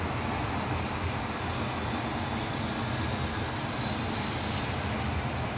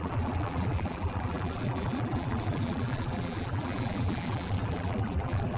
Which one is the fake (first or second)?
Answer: second